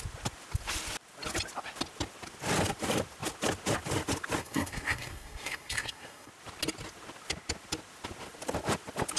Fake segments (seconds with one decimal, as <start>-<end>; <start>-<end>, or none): 4.4-6.3